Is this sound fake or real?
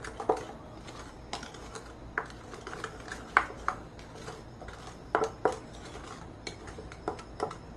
real